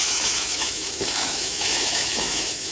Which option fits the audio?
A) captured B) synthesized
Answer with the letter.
B